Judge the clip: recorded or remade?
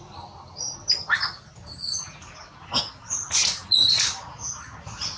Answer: recorded